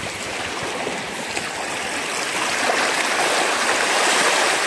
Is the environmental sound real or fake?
real